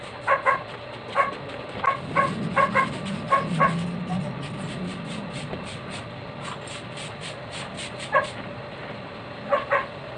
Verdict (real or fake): real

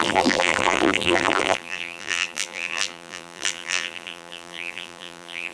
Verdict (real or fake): fake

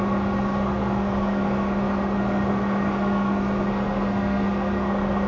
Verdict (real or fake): fake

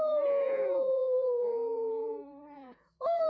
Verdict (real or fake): fake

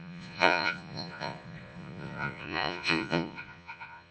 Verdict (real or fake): fake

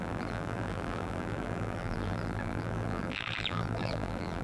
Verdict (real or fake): fake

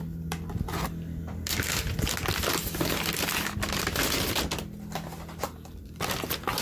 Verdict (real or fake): real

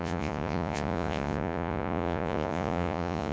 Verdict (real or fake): fake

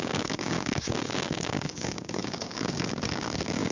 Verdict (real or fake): fake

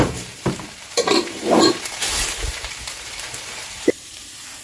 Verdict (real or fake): fake